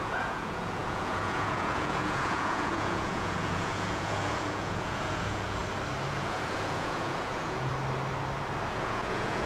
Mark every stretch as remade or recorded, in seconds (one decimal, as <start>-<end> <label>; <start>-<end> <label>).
0.0-5.6 remade; 5.6-6.1 recorded; 6.1-7.7 remade; 7.7-8.7 recorded; 8.7-9.5 remade